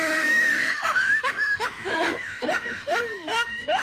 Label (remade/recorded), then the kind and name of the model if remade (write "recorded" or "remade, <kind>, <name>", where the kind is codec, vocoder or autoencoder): remade, autoencoder, DAC-VAE